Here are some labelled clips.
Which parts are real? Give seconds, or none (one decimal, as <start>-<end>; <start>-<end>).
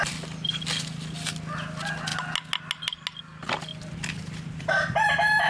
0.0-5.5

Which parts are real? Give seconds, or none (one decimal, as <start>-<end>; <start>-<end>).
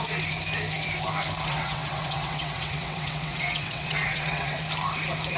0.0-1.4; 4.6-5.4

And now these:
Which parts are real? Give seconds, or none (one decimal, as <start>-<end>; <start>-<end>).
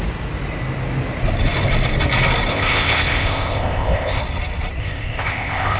0.0-2.5; 4.2-4.8